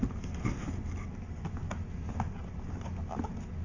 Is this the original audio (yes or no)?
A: yes